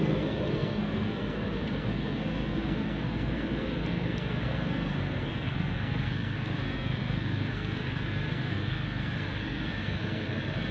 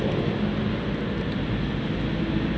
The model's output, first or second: first